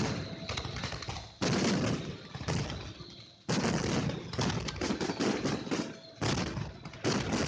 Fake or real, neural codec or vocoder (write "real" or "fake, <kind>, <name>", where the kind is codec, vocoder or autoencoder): real